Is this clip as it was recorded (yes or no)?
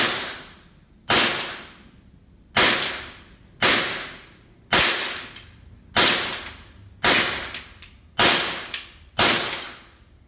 yes